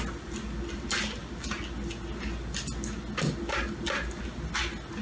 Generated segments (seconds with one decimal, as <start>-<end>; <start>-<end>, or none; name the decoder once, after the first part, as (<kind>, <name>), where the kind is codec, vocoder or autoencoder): none